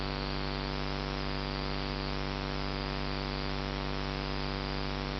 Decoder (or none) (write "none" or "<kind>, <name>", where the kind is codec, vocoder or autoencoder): none